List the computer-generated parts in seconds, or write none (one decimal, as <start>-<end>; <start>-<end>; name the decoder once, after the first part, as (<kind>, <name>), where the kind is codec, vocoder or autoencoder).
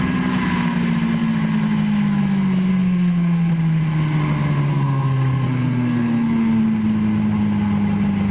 2.7-3.5 (codec, SNAC); 4.7-6.6